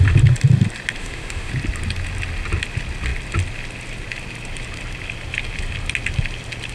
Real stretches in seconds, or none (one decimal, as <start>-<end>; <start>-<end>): 0.0-1.0; 1.5-6.7